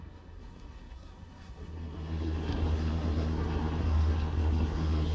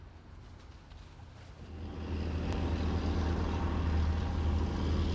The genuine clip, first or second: second